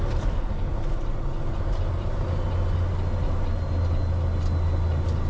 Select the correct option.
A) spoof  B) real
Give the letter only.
B